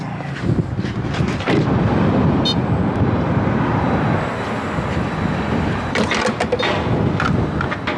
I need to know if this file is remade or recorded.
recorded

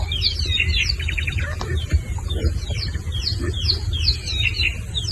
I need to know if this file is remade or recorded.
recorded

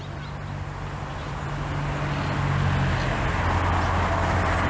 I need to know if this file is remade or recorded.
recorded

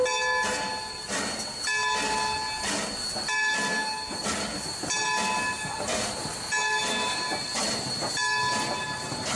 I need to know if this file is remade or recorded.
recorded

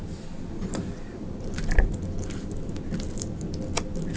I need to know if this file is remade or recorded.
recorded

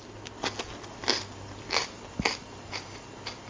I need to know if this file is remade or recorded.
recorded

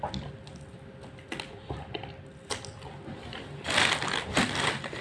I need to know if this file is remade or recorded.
recorded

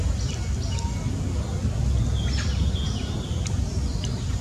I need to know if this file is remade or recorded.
recorded